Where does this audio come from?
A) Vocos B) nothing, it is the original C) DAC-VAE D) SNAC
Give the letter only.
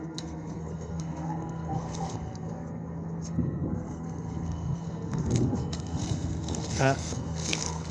D